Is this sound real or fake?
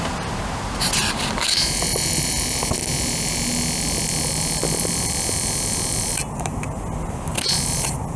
real